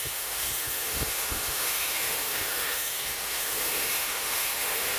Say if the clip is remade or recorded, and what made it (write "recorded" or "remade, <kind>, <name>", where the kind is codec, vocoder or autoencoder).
remade, autoencoder, DAC-VAE